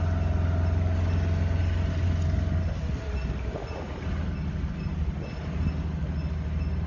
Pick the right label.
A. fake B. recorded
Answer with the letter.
B